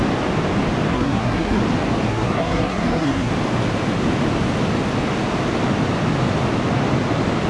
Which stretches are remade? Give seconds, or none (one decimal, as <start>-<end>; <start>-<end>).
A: 0.9-1.6; 2.1-3.3